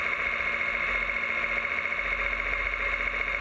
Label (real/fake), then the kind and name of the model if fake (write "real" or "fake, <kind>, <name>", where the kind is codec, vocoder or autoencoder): real